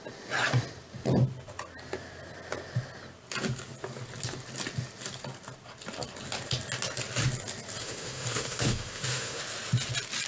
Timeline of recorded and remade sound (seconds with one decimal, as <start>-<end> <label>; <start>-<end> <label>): 0.0-7.8 recorded; 7.8-9.4 remade; 9.4-10.3 recorded